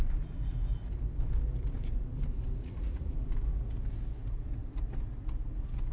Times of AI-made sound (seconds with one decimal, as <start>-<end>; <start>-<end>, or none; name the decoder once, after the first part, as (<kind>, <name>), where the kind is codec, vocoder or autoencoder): 2.6-3.1 (vocoder, Vocos)